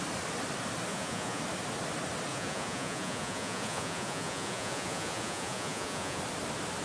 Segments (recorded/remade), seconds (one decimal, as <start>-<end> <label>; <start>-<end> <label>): 0.0-0.9 recorded; 0.9-1.4 remade; 1.4-2.3 recorded; 2.3-6.2 remade; 6.2-6.8 recorded